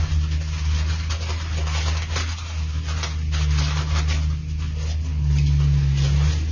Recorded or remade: recorded